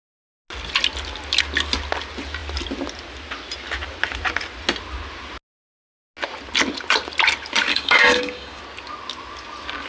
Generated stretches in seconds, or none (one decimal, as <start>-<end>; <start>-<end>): 7.7-8.6